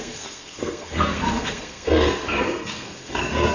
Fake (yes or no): yes